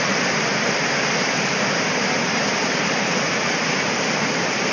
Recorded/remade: remade